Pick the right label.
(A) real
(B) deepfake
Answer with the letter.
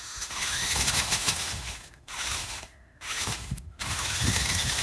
B